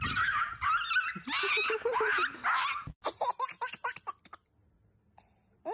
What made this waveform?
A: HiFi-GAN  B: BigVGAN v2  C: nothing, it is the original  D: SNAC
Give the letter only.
C